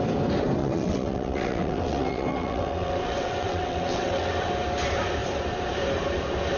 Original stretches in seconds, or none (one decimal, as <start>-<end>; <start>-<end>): 0.0-0.6; 4.5-6.6